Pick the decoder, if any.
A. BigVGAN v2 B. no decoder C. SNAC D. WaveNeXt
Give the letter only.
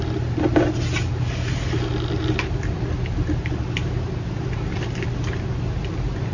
B